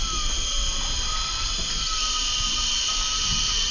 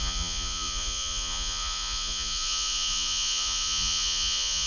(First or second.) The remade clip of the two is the second